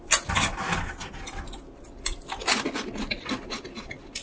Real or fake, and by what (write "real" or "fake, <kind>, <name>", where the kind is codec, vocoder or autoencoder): real